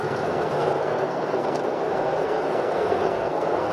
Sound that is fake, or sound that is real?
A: fake